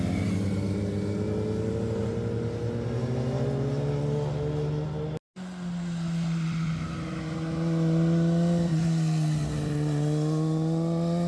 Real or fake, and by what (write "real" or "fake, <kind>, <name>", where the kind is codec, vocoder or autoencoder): real